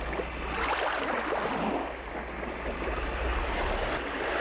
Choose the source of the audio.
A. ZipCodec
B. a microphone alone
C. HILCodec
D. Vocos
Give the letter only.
B